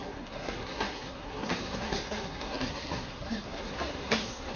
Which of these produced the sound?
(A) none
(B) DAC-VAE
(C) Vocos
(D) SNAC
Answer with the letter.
D